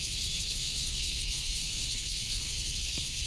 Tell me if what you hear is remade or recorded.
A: remade